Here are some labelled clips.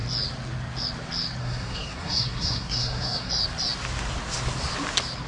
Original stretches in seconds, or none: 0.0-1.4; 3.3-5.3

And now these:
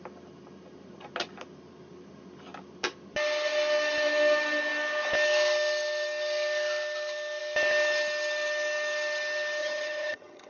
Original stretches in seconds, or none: 0.0-9.6